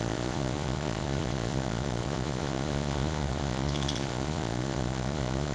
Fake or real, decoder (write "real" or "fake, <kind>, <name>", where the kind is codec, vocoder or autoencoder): fake, vocoder, Vocos